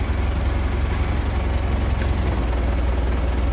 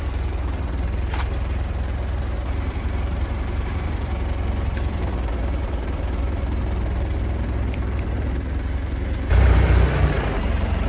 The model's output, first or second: second